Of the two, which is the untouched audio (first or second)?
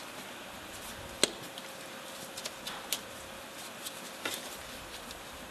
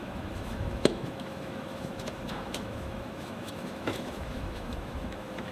first